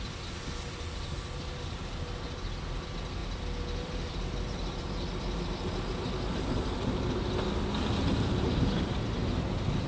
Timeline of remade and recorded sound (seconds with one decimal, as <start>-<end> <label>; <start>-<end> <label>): 0.0-9.9 recorded